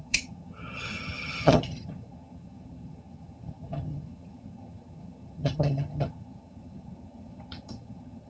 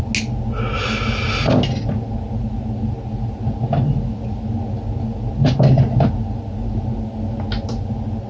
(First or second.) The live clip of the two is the second